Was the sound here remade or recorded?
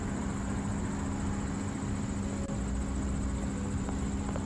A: recorded